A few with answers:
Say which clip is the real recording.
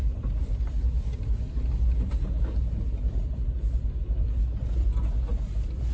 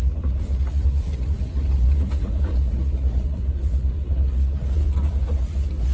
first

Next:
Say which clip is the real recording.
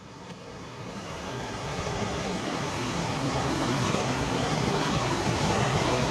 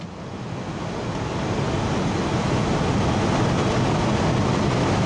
second